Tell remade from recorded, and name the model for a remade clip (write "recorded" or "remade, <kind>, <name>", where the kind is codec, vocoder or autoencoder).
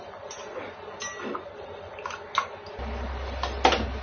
recorded